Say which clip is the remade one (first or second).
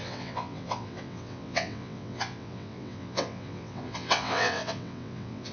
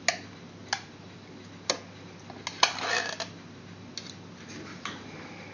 first